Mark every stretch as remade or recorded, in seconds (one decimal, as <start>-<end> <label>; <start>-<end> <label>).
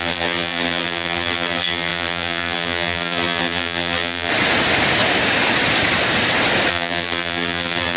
0.0-4.3 remade; 4.3-6.7 recorded; 6.7-8.0 remade